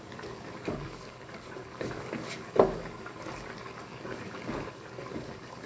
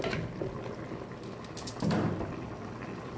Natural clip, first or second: second